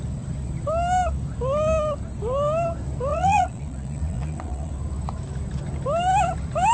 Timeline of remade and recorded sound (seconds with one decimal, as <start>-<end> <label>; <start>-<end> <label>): 0.0-3.1 recorded; 3.1-4.7 remade; 4.7-6.7 recorded

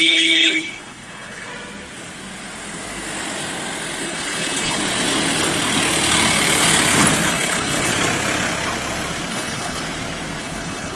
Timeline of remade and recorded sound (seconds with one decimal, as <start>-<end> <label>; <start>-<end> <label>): 0.0-1.5 remade; 1.5-4.0 recorded; 4.0-4.8 remade; 4.8-7.3 recorded; 7.3-7.9 remade; 7.9-9.3 recorded; 9.3-9.8 remade; 9.8-10.4 recorded; 10.4-11.0 remade

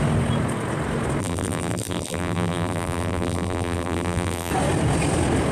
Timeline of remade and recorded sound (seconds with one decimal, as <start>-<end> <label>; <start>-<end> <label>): 0.0-1.2 recorded; 1.2-4.5 remade; 4.5-5.5 recorded

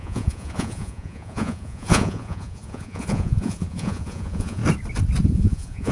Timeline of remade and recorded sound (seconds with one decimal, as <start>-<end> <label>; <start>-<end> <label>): 0.0-4.6 remade; 4.6-5.2 recorded; 5.2-5.9 remade